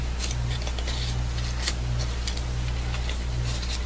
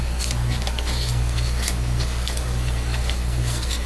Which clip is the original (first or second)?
first